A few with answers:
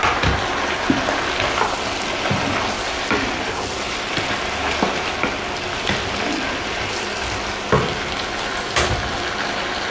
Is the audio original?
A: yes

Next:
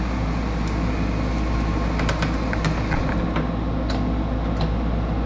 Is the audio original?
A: yes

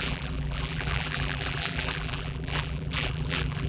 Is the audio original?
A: no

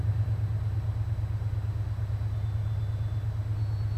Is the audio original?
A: yes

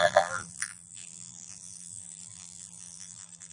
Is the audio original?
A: no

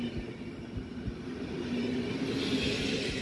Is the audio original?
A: yes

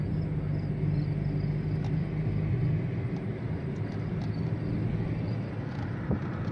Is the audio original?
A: yes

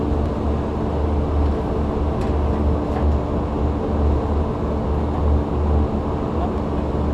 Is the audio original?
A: yes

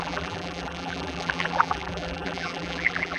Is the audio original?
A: no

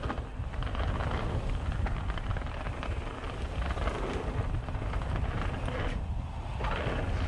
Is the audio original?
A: yes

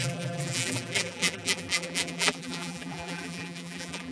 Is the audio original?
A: no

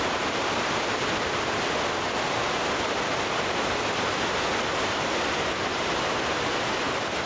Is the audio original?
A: no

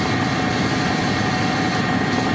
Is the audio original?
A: no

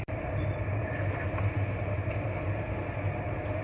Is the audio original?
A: yes